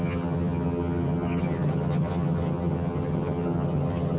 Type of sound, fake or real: fake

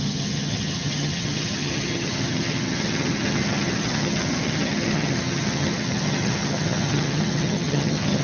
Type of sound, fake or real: fake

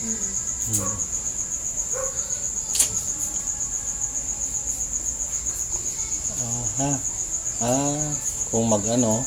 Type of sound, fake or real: real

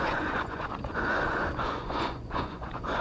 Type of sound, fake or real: fake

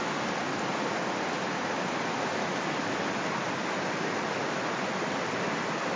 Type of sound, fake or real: real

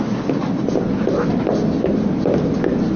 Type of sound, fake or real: real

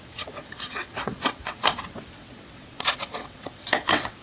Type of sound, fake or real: fake